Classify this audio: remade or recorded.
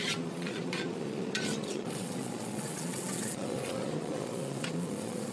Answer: remade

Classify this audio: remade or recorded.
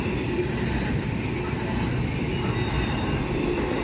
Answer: recorded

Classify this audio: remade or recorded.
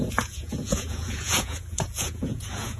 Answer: remade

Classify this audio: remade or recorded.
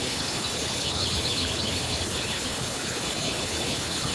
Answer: remade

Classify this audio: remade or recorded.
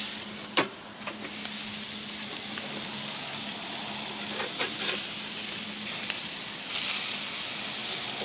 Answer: recorded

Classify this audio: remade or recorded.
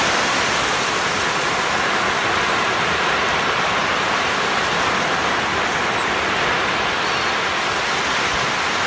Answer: recorded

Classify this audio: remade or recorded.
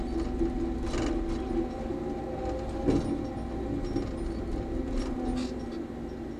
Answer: recorded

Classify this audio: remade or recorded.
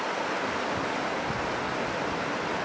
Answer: recorded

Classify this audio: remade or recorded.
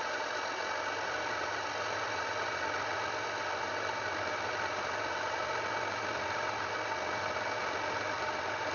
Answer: recorded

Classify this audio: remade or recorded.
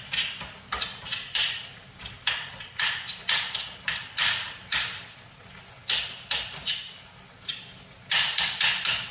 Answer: recorded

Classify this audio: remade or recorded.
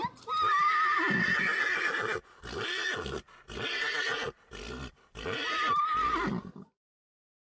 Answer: recorded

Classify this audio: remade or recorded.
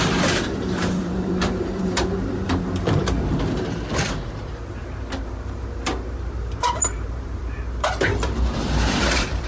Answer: remade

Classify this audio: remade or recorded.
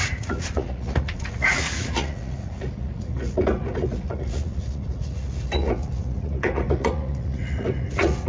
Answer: remade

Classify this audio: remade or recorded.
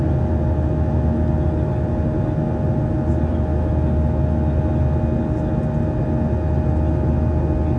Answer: recorded